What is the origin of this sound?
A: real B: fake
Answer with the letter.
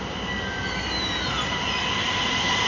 A